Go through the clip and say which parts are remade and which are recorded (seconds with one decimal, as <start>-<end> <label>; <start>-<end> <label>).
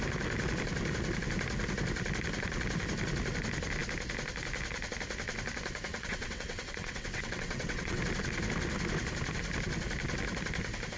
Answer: 0.0-5.9 recorded; 5.9-8.0 remade; 8.0-11.0 recorded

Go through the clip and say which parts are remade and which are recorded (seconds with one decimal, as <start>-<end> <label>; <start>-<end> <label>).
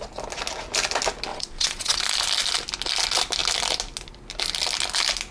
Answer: 0.0-1.3 recorded; 1.3-2.0 remade; 2.0-5.3 recorded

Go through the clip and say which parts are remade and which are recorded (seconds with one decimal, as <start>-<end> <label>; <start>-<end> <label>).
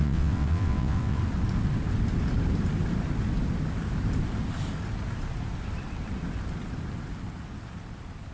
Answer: 0.0-1.2 remade; 1.2-8.3 recorded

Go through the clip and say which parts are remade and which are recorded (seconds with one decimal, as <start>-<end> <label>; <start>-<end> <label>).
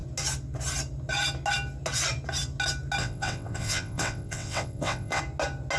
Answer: 0.0-3.0 recorded; 3.0-5.2 remade; 5.2-5.8 recorded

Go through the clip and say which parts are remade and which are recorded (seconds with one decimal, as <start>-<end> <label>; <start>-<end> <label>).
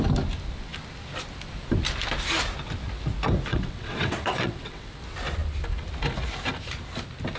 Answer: 0.0-3.5 recorded; 3.5-4.9 remade; 4.9-7.4 recorded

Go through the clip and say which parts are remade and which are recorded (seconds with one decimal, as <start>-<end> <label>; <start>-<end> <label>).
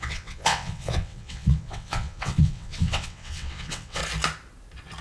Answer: 0.0-4.0 remade; 4.0-5.0 recorded